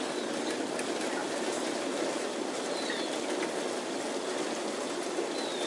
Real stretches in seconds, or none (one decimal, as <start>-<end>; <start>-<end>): 0.0-1.2; 2.0-5.7